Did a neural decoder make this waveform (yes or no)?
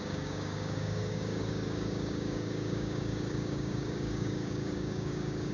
yes